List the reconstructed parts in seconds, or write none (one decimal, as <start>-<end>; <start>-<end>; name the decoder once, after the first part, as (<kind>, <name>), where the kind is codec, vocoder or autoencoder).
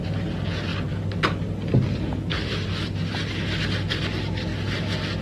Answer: none